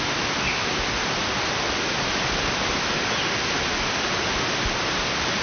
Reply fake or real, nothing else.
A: real